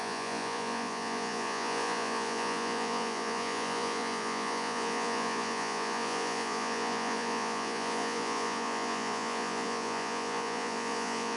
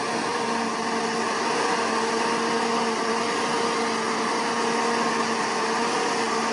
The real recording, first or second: second